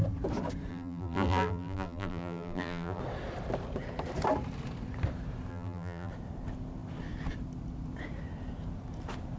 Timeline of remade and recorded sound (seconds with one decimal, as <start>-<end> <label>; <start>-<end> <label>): 0.0-0.7 recorded; 0.7-3.0 remade; 3.0-5.5 recorded; 5.5-6.1 remade; 6.1-9.4 recorded